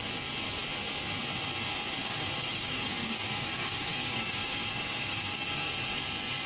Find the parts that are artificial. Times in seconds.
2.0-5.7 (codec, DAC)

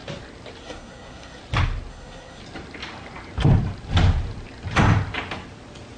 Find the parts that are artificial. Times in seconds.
0.6-1.4 (codec, SNAC); 1.9-2.4

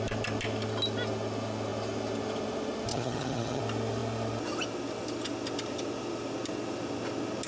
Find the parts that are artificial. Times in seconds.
2.9-3.6 (vocoder, HiFi-GAN)

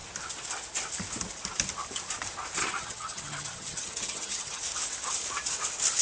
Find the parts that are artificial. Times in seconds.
2.6-4.6 (vocoder, HiFi-GAN)

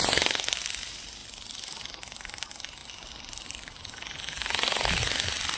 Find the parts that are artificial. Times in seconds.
none

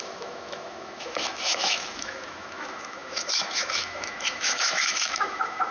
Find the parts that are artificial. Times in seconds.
0.0-5.7 (autoencoder, DAC-VAE)

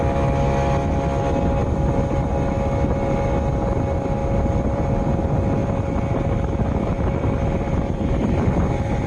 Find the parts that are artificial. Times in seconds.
1.6-2.3 (vocoder, BigVGAN v2); 4.2-4.9; 5.6-8.7